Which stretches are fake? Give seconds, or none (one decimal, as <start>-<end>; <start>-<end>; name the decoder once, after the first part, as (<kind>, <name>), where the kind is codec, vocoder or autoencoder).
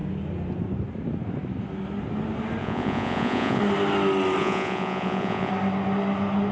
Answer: 2.6-3.6 (vocoder, Vocos); 4.4-5.5